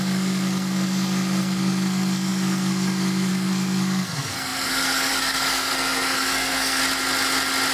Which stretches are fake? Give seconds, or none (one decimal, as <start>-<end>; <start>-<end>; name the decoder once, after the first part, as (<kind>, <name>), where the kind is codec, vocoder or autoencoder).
0.0-6.8 (codec, SNAC)